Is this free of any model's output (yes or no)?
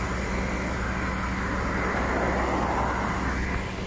yes